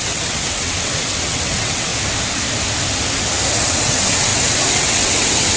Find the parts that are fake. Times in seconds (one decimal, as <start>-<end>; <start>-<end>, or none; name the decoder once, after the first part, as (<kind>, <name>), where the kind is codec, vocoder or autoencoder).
0.0-1.9 (vocoder, WaveNeXt); 3.5-5.6